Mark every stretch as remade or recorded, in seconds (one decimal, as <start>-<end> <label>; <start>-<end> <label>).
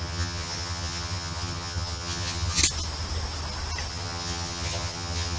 0.0-2.6 remade; 2.6-3.9 recorded; 3.9-5.4 remade